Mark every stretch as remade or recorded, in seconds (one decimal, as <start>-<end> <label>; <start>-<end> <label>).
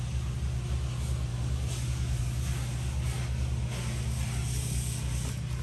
0.0-1.3 recorded; 1.3-3.2 remade; 3.2-5.6 recorded